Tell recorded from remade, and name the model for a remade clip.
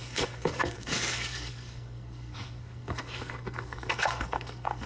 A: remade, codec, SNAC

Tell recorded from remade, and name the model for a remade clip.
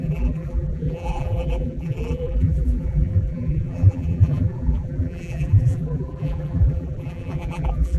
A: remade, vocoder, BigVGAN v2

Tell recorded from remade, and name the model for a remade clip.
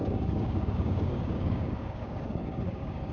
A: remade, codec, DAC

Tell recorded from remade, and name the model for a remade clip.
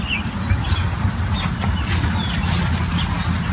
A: recorded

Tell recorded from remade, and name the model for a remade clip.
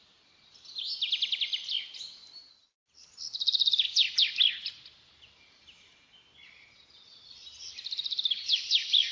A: recorded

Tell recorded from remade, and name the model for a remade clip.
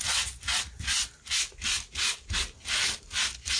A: recorded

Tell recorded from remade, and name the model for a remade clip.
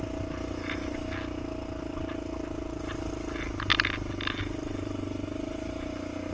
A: recorded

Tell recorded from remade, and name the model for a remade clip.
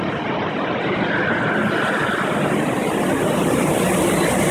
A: recorded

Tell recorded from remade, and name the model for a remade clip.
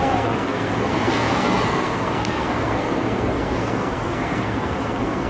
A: remade, codec, SNAC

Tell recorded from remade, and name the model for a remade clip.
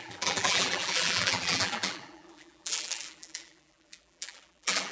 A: remade, vocoder, BigVGAN v2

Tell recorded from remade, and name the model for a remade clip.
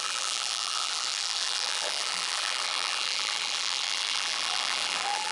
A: remade, vocoder, BigVGAN v2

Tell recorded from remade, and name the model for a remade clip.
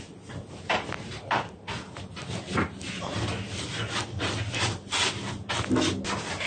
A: recorded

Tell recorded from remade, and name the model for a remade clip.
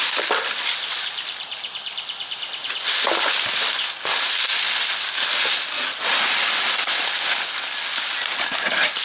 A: recorded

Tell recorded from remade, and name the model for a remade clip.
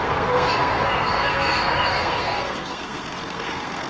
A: remade, codec, SNAC